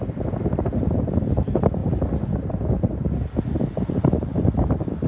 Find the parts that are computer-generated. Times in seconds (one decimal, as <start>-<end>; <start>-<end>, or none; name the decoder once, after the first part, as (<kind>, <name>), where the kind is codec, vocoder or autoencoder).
none